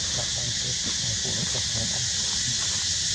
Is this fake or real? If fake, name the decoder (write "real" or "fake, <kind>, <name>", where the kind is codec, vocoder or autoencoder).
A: real